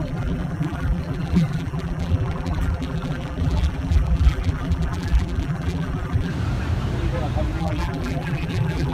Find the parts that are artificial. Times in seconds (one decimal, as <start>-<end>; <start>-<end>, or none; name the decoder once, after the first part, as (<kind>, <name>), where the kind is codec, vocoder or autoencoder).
0.0-6.3 (vocoder, BigVGAN v2); 7.6-8.9